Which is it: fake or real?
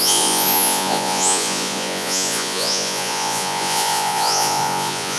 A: fake